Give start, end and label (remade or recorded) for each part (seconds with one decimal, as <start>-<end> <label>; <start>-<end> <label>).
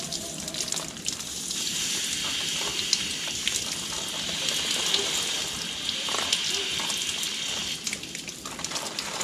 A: 0.0-7.6 recorded; 7.6-9.2 remade